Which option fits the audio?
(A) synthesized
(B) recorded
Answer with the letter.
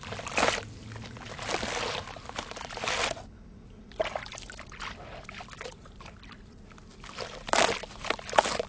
B